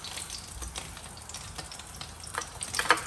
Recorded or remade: recorded